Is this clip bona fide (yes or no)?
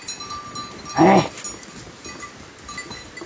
yes